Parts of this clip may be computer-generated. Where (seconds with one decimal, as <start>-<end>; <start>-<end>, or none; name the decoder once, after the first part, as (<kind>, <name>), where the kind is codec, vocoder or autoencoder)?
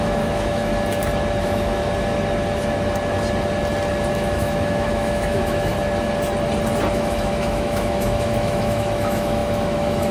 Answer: 0.0-0.7 (autoencoder, DAC-VAE); 1.4-1.8; 4.1-5.7; 6.9-10.1